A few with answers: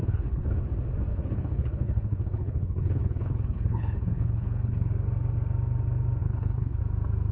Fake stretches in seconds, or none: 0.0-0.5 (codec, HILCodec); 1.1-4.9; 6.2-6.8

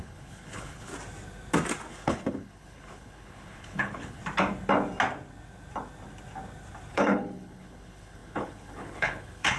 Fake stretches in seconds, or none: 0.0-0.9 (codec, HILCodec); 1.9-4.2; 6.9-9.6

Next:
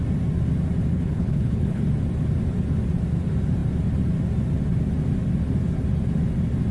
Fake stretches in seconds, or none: 0.9-1.8 (codec, HILCodec)

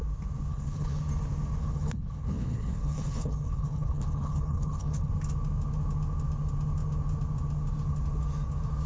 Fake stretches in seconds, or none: 0.5-1.0 (codec, HILCodec); 1.6-5.1

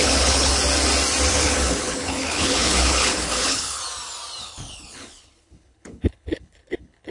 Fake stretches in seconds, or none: 0.0-0.5 (codec, HILCodec); 1.3-3.8; 4.4-7.1

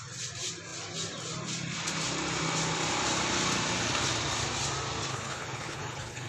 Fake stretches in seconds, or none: 5.1-6.3 (codec, HILCodec)